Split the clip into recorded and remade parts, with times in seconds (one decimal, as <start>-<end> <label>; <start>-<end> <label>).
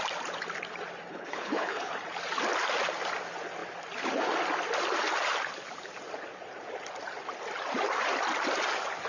0.0-1.1 recorded; 1.1-1.9 remade; 1.9-9.1 recorded